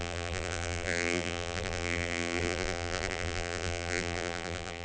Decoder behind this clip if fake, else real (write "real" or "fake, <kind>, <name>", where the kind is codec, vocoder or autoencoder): fake, vocoder, BigVGAN v2